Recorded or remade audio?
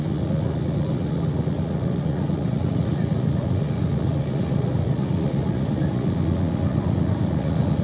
remade